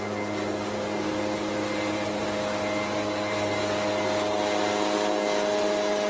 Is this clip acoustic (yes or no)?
yes